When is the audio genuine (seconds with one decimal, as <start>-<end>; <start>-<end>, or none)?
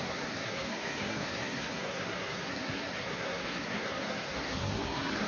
none